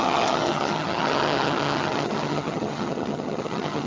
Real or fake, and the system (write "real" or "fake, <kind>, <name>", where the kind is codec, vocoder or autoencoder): fake, vocoder, HiFi-GAN